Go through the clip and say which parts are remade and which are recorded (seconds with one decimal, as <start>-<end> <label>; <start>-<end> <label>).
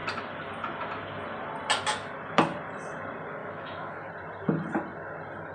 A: 0.0-3.4 recorded; 3.4-4.1 remade; 4.1-5.5 recorded